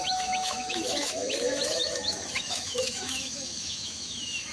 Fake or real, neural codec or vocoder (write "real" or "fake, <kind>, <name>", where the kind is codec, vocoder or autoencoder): fake, autoencoder, DAC-VAE